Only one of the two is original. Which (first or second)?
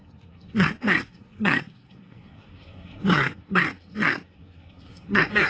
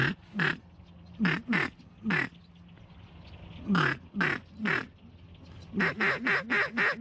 second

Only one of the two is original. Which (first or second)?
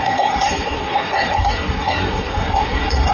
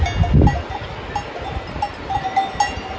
second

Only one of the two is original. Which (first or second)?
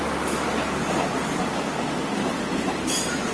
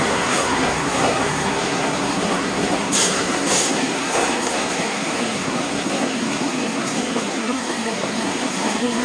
first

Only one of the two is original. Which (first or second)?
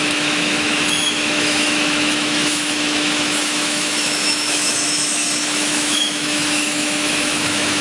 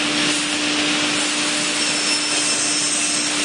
second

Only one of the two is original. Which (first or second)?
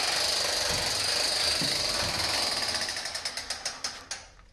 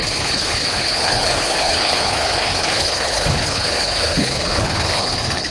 first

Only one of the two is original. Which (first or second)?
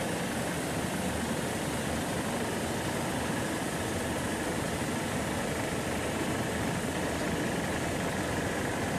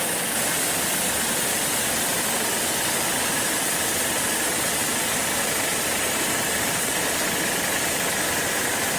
second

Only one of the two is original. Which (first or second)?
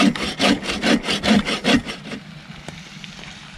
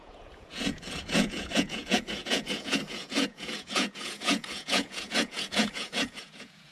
first